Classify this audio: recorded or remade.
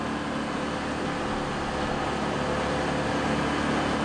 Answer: recorded